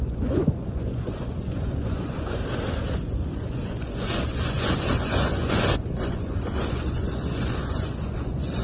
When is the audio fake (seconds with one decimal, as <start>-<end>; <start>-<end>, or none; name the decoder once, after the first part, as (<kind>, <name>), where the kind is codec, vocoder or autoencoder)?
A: 0.0-2.4 (vocoder, Vocos); 2.9-8.6